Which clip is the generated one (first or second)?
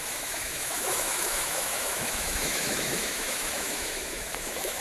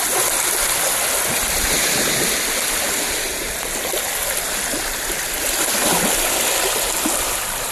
first